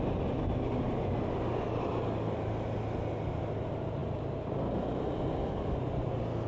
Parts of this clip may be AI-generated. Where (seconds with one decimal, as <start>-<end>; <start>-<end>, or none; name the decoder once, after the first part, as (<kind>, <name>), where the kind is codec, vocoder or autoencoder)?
none